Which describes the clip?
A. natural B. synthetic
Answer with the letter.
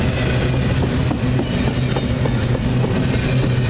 A